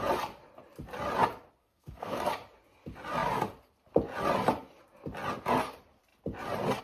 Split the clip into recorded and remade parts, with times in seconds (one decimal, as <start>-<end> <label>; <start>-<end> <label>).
0.0-1.6 recorded; 1.6-2.2 remade; 2.2-6.8 recorded